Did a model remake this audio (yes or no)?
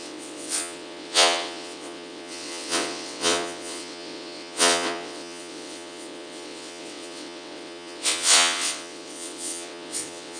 yes